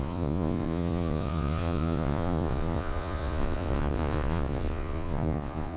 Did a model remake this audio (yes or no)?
yes